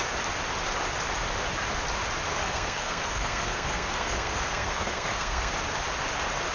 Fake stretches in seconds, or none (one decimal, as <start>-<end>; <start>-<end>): 2.3-5.5